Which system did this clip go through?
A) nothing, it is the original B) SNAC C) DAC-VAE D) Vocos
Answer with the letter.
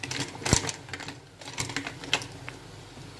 A